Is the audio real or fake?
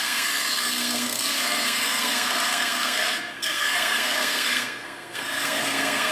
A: fake